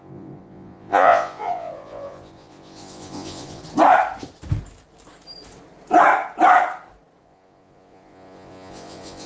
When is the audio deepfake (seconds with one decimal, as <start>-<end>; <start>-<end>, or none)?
0.0-3.6; 7.2-9.3

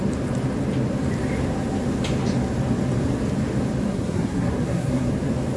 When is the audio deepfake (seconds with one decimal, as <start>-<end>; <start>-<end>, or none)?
3.9-5.1

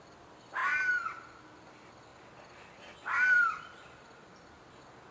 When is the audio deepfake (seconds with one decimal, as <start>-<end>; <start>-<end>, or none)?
none